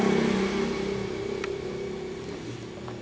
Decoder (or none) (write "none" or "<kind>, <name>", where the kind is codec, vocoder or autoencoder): none